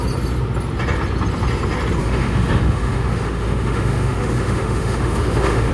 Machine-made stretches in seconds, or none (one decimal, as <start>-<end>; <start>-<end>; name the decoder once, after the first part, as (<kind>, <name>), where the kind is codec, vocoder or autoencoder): 2.0-5.7 (autoencoder, DAC-VAE)